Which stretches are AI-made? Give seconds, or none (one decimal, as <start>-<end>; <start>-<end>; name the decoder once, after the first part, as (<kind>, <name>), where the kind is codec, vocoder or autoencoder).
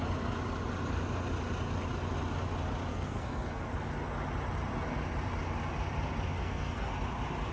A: 2.9-3.6 (codec, SNAC); 6.4-6.9